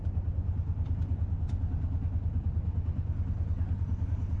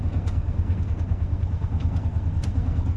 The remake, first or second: second